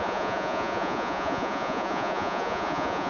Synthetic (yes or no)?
yes